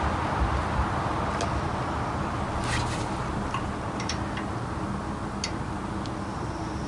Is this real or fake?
real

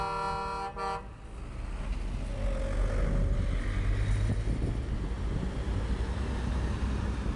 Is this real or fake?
real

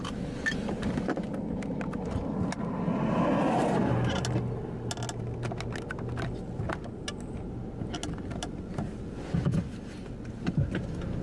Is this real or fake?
real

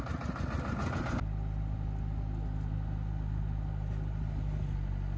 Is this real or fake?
real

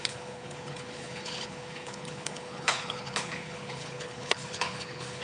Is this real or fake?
fake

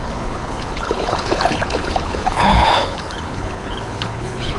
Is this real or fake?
fake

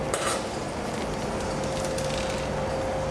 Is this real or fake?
real